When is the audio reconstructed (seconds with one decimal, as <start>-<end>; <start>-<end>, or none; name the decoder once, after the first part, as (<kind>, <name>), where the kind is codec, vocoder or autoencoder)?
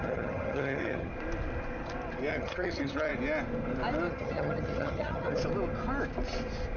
0.0-1.1 (vocoder, HiFi-GAN); 2.3-3.1; 4.1-5.4